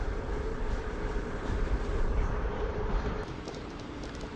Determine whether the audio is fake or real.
fake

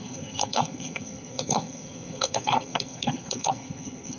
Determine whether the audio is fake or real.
fake